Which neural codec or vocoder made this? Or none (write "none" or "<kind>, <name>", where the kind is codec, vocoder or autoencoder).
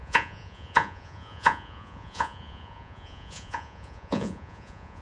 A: vocoder, Vocos